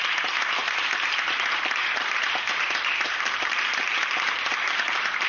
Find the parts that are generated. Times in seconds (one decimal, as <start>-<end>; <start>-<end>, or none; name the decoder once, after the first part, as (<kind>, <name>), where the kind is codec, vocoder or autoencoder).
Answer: none